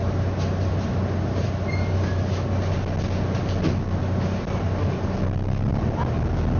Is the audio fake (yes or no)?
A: no